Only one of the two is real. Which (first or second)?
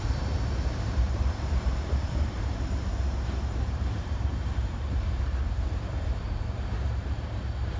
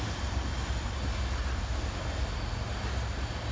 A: second